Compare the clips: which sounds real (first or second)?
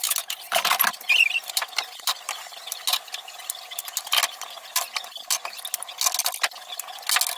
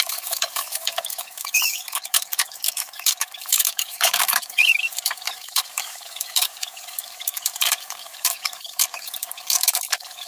first